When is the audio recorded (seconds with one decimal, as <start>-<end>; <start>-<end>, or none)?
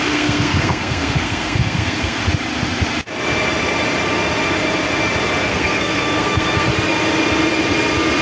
2.2-5.5; 6.7-8.2